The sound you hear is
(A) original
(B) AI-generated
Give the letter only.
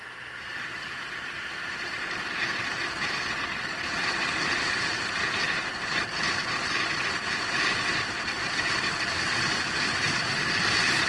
B